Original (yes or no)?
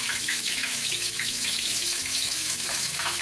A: no